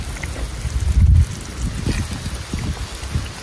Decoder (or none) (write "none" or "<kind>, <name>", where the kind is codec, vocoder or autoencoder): none